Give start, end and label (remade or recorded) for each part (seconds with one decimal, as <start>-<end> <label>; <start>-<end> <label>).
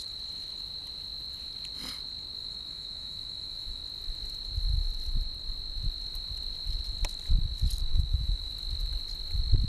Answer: 0.0-2.4 recorded; 2.4-3.8 remade; 3.8-7.9 recorded; 7.9-8.5 remade; 8.5-9.7 recorded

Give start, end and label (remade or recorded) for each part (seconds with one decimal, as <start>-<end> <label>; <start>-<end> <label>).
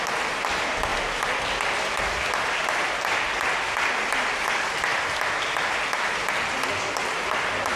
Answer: 0.0-7.8 recorded